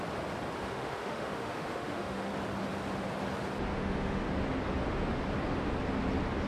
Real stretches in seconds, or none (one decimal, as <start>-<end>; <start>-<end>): 0.0-0.7; 2.3-3.7; 4.3-6.5